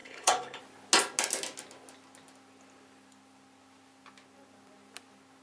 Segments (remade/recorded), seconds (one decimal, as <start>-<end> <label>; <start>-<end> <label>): 0.0-0.6 remade; 0.6-5.4 recorded